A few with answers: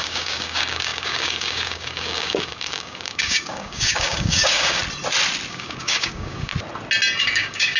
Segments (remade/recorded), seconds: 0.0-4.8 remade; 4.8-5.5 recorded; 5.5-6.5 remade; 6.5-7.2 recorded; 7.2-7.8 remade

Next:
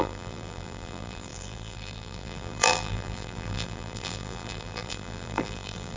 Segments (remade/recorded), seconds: 0.0-6.0 remade